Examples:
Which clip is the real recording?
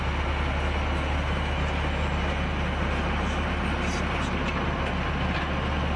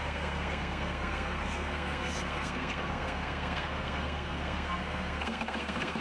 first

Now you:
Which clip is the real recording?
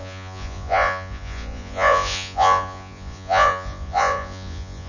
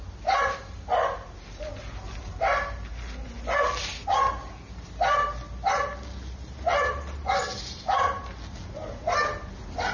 second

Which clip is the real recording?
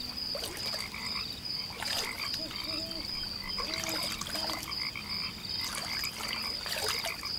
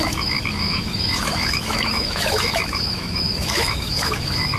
first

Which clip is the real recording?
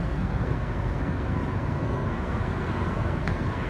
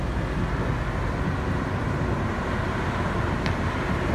second